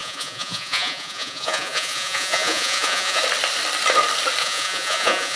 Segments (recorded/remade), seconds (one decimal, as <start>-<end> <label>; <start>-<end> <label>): 0.0-3.2 remade; 3.2-4.4 recorded; 4.4-5.4 remade